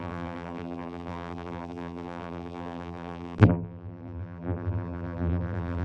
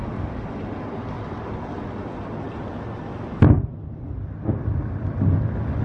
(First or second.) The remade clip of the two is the first